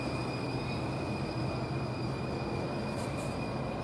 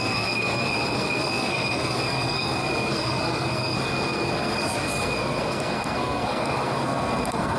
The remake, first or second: second